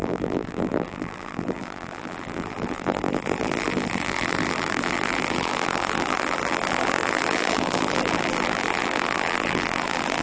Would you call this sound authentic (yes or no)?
no